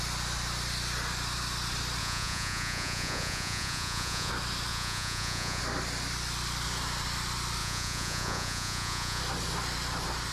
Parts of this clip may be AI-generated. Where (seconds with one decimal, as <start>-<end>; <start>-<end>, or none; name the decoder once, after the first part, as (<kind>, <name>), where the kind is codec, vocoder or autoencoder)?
2.0-4.3 (vocoder, Vocos); 4.7-5.6; 7.6-9.2